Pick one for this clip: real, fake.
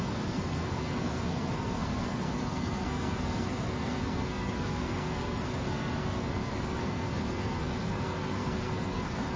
fake